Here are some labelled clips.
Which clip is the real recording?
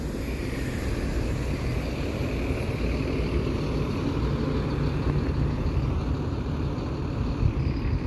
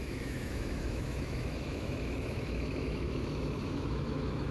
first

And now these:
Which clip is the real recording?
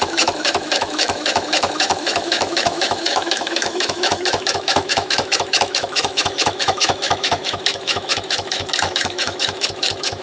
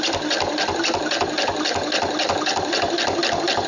second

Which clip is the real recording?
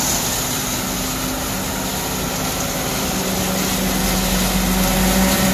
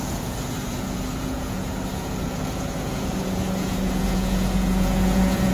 first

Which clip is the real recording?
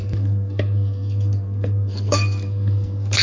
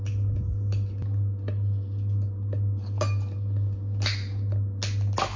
second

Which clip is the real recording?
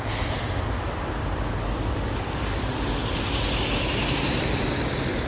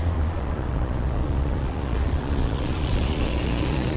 first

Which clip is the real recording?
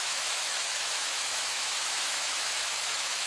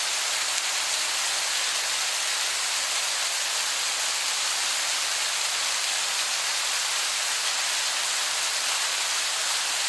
second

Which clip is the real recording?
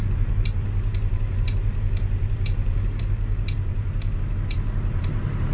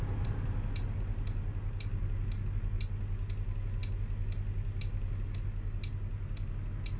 second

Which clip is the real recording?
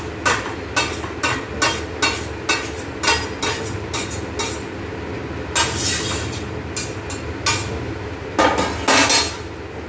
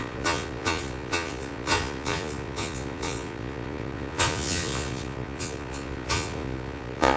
first